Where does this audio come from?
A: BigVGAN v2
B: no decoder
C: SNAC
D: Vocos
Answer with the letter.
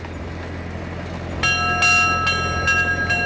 B